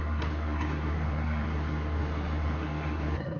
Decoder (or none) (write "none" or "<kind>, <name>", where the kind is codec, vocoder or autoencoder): codec, SNAC